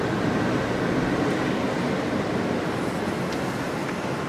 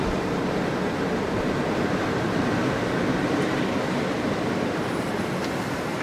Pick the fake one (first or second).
second